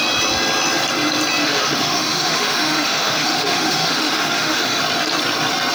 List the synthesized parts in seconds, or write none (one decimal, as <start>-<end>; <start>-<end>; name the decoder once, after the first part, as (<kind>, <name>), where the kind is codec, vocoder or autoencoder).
1.4-4.8 (autoencoder, DAC-VAE)